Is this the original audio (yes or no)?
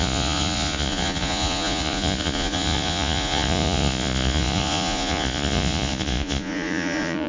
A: no